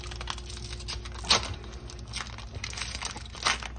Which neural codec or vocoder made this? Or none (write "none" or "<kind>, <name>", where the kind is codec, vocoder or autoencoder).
none